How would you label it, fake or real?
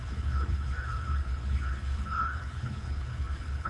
fake